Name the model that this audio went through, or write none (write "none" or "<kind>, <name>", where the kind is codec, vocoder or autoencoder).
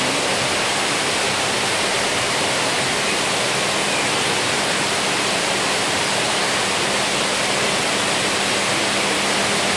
none